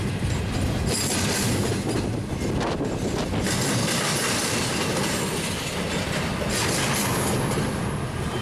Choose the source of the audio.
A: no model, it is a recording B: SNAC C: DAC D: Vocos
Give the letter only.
A